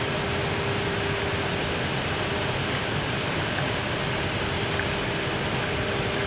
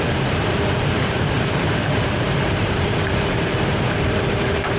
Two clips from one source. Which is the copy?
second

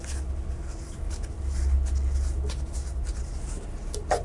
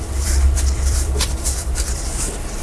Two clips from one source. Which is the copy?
second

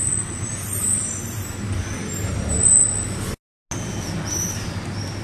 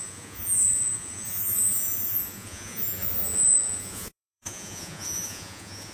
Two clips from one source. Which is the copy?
second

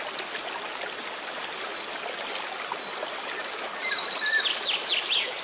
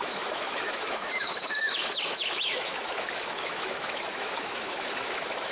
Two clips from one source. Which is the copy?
second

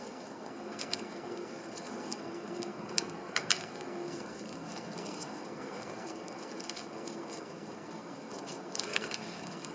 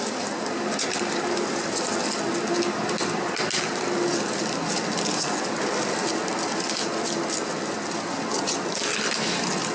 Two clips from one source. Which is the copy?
first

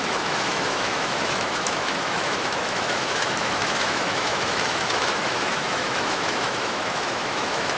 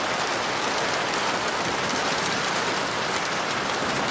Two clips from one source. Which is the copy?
first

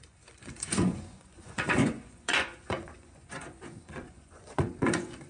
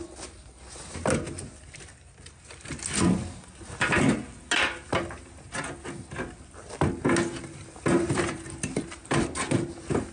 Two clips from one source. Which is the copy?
first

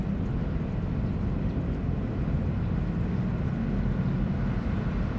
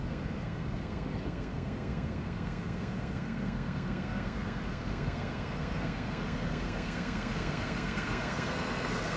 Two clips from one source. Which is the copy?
second